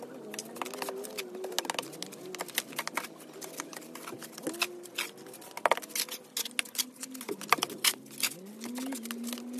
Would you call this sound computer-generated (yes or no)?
no